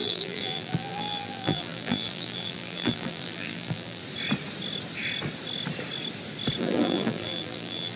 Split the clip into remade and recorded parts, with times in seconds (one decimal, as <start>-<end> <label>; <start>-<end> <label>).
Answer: 0.0-4.0 remade; 4.0-6.6 recorded; 6.6-8.0 remade